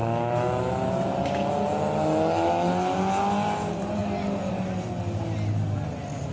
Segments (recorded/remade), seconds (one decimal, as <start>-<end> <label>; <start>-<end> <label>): 0.0-6.3 recorded

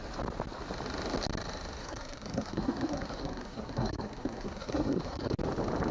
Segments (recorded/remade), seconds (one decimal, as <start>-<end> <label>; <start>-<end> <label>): 0.0-1.8 recorded; 1.8-5.3 remade; 5.3-5.9 recorded